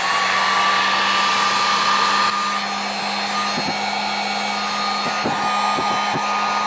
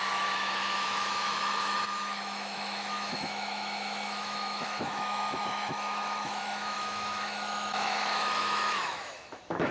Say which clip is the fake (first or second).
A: second